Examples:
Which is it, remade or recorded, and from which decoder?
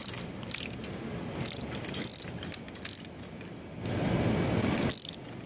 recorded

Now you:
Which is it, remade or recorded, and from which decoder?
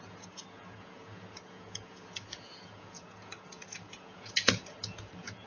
remade, vocoder, Vocos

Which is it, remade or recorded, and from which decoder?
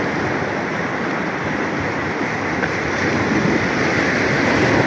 recorded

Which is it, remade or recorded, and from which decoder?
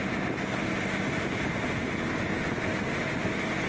recorded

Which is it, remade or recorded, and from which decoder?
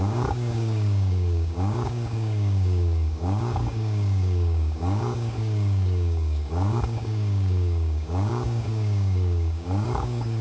remade, codec, DAC